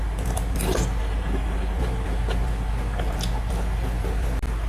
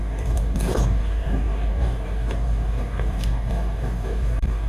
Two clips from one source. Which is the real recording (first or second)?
first